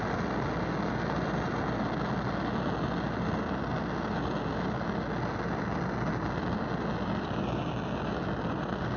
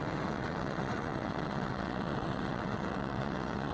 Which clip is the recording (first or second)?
first